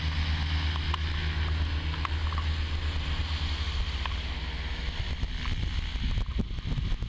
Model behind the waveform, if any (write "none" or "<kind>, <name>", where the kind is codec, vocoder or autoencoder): none